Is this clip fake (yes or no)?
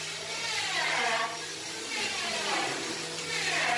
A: no